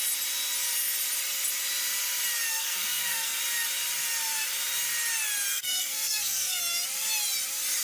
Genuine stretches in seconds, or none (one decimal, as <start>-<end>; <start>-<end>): 0.0-2.5; 3.4-5.5; 6.6-7.8